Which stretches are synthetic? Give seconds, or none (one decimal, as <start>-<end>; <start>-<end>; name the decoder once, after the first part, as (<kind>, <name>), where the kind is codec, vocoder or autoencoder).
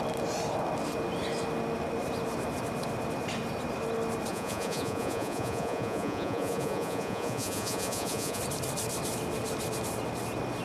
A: 4.3-8.4 (vocoder, Vocos)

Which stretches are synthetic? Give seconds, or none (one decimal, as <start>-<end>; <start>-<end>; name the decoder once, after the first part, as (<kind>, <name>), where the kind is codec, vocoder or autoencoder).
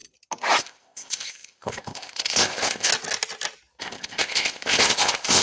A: 0.6-2.9 (codec, ZipCodec); 3.8-5.4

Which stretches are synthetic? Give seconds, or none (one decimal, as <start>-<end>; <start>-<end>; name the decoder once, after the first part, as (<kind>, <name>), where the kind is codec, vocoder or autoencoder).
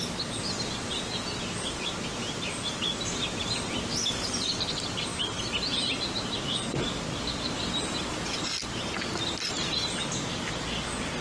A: none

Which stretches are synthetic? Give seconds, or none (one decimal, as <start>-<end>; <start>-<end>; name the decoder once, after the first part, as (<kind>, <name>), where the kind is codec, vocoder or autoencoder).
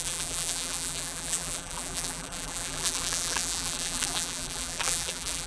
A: 0.0-5.5 (vocoder, BigVGAN v2)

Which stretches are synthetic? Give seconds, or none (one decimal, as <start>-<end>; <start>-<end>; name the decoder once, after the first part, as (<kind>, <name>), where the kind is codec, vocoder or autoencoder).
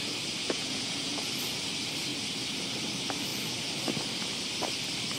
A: 0.4-1.3 (vocoder, Vocos)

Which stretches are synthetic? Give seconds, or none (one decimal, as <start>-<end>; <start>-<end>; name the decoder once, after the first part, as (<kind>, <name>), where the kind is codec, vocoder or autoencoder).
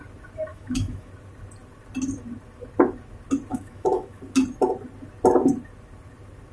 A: 0.5-1.1 (autoencoder, DAC-VAE); 3.5-4.2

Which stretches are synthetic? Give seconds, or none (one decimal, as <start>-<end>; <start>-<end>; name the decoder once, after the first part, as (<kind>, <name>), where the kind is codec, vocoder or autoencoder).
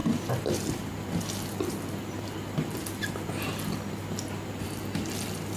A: 0.0-3.4 (vocoder, BigVGAN v2)